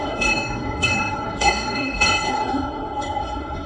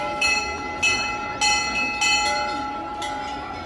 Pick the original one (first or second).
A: second